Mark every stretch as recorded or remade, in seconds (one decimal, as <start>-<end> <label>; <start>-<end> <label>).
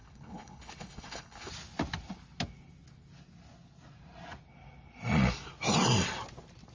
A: 0.0-1.5 remade; 1.5-6.7 recorded